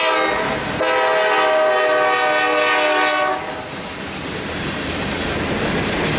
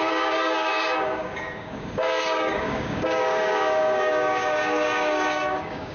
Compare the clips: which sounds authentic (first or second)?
first